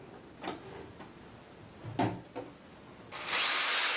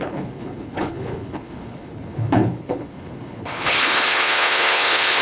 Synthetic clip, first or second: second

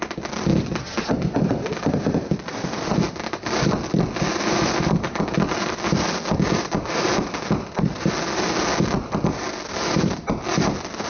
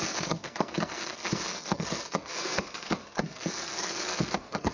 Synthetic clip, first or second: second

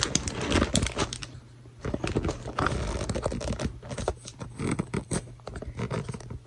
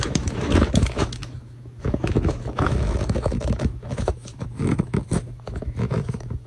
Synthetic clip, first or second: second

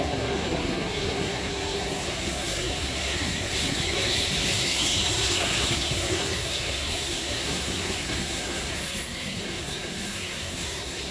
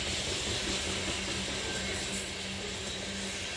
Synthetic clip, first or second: first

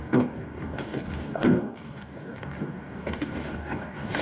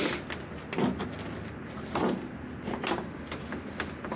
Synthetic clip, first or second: first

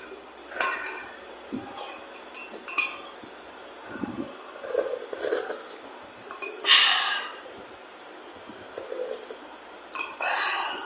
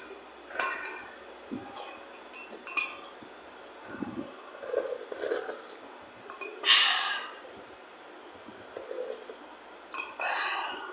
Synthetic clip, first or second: first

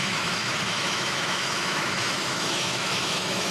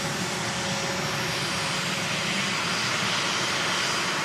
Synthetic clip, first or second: first